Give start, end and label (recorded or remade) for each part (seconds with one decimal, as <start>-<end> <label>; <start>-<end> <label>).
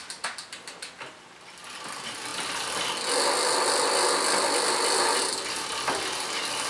0.0-6.7 recorded